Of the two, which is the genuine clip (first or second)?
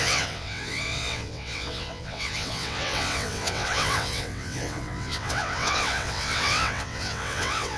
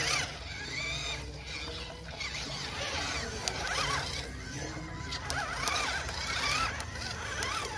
second